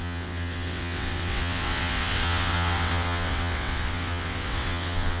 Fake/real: fake